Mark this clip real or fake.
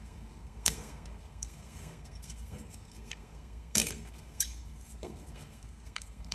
fake